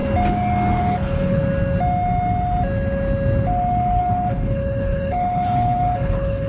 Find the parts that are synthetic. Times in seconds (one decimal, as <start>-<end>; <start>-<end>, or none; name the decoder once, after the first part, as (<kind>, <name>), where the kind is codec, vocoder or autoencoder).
0.8-1.4 (codec, HILCodec); 4.0-6.5